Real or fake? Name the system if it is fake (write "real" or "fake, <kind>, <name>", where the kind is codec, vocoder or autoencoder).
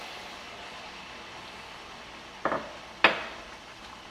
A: real